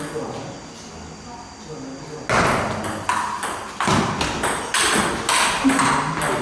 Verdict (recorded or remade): recorded